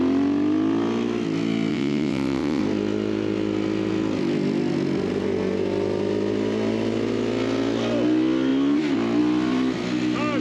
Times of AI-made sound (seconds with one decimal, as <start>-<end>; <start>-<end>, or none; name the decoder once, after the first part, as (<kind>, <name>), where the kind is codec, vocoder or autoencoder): 1.7-2.6 (vocoder, WaveNeXt)